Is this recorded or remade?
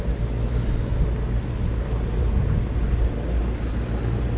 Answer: recorded